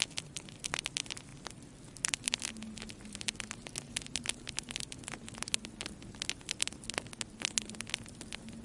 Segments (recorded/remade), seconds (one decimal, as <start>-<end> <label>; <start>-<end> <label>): 0.0-1.3 recorded; 1.3-2.5 remade; 2.5-8.6 recorded